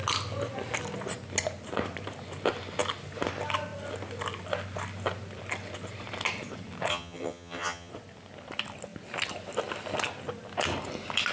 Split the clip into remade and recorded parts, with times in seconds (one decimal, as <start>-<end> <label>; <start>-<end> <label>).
0.0-6.9 recorded; 6.9-7.9 remade; 7.9-11.3 recorded